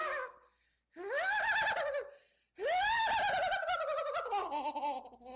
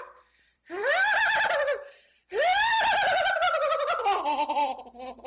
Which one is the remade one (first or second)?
second